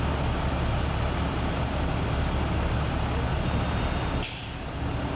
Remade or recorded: recorded